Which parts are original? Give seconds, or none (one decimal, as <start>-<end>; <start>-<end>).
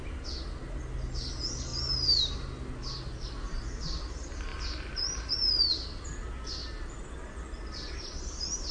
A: 0.0-8.7